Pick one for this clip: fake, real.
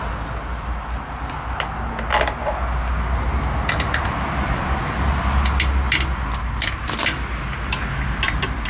real